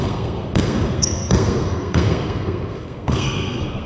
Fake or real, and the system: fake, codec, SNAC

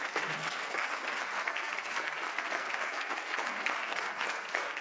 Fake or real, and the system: fake, codec, SNAC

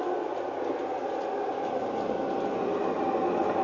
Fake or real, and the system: real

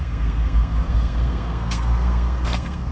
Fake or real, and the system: fake, codec, SNAC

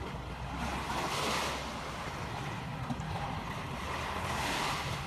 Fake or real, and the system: real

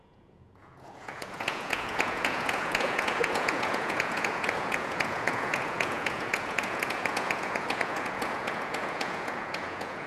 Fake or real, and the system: fake, vocoder, Vocos